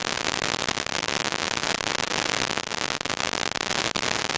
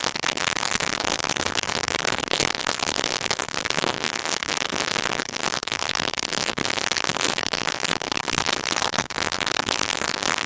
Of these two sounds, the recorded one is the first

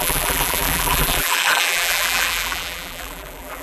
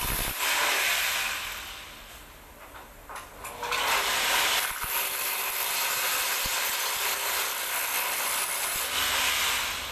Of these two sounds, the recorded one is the second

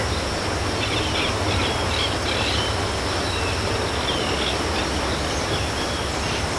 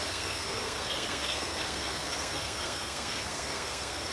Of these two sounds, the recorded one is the first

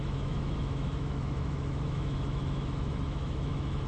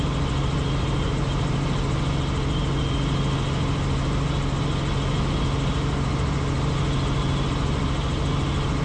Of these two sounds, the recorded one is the second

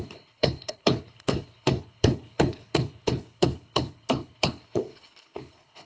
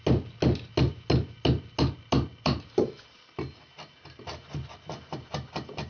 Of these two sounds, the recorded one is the second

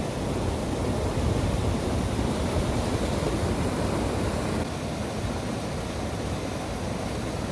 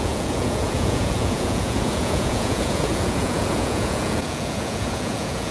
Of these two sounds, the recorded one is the first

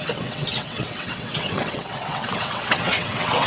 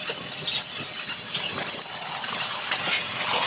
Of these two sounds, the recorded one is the second